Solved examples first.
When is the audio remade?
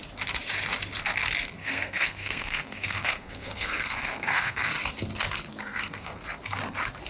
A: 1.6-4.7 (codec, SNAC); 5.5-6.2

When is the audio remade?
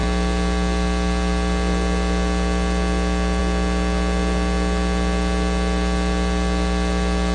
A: none